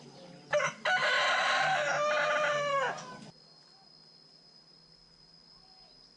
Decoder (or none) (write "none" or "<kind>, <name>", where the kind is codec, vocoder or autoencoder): none